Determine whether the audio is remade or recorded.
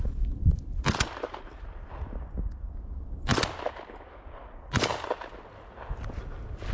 recorded